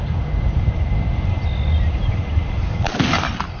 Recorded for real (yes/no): yes